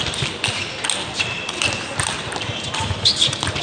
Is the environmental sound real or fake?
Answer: real